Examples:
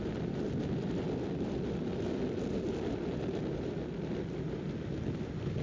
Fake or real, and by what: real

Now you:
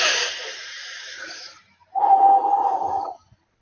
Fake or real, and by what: fake, vocoder, BigVGAN v2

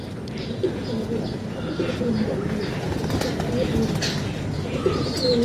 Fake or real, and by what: real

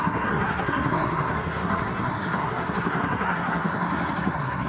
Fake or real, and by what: fake, codec, SNAC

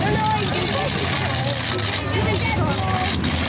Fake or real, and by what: real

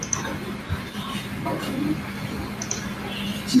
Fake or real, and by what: real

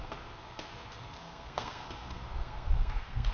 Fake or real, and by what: fake, codec, SNAC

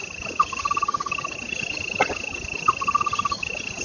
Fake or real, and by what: real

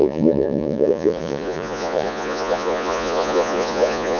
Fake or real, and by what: fake, vocoder, Vocos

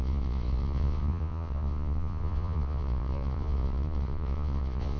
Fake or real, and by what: fake, vocoder, Vocos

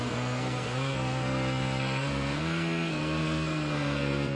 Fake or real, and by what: fake, codec, SNAC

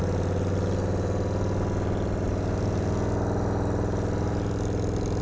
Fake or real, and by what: real